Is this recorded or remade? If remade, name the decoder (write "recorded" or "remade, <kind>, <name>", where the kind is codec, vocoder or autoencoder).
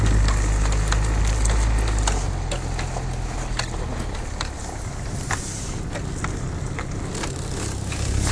recorded